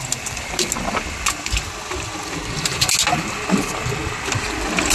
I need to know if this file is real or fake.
real